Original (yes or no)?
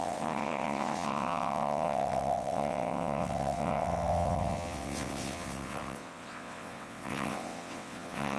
no